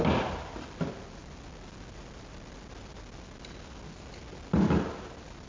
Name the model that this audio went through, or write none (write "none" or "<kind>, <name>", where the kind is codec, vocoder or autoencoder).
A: none